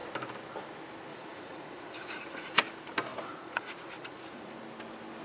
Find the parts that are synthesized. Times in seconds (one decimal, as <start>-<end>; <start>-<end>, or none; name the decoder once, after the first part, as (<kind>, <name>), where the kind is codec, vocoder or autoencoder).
1.1-2.6 (vocoder, Vocos); 3.1-4.5